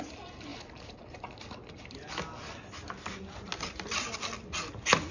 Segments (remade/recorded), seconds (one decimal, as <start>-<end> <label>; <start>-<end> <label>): 0.0-5.1 recorded